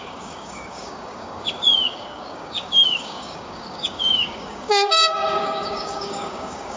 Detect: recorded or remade remade